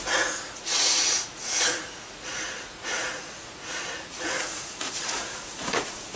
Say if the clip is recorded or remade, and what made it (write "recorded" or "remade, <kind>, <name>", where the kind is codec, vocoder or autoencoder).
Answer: remade, vocoder, Vocos